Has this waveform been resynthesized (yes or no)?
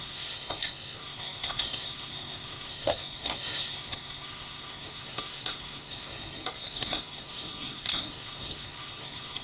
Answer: yes